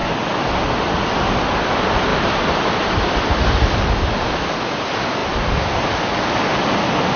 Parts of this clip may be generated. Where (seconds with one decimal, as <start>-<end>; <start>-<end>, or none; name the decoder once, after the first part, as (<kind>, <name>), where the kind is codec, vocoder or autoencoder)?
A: none